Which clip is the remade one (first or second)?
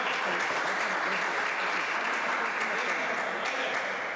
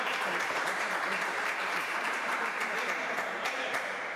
second